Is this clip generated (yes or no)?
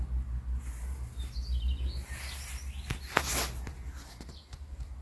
no